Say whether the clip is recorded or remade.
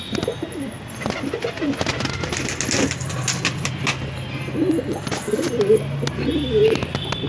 recorded